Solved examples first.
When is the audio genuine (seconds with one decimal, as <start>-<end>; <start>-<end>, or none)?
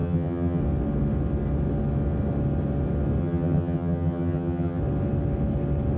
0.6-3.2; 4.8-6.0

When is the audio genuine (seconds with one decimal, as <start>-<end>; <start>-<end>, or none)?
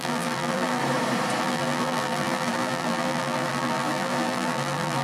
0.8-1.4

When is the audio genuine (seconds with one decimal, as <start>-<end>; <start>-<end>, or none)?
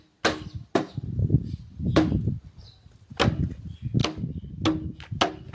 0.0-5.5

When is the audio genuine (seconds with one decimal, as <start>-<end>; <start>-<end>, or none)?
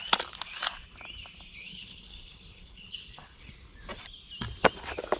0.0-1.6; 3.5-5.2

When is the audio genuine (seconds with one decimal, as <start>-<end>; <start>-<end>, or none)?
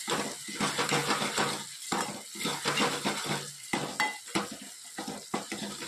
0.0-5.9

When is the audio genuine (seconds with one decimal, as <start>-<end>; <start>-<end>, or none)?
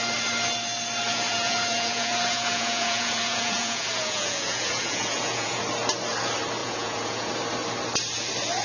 0.0-1.1; 5.6-6.6; 7.3-8.6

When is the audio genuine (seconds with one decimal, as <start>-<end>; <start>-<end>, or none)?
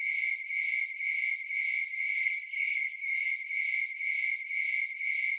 0.0-2.1; 3.3-5.4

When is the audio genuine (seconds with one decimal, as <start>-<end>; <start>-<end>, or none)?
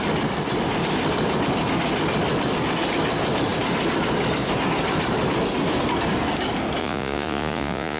0.0-6.8